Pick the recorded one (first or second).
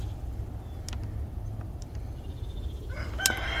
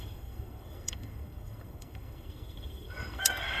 first